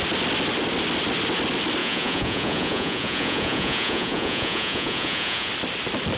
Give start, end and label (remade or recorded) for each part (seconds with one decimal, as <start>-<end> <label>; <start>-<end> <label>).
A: 0.0-1.8 recorded; 1.8-5.5 remade; 5.5-6.2 recorded